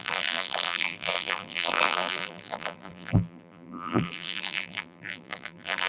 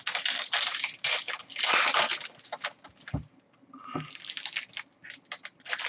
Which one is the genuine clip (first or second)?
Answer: second